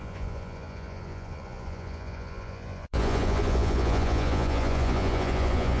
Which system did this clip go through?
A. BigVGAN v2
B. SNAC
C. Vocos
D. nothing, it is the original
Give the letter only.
C